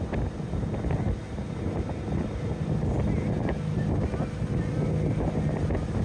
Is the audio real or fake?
real